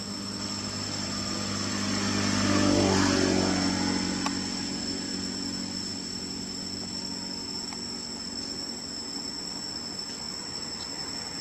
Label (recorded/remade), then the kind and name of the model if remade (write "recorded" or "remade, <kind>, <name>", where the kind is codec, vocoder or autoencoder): recorded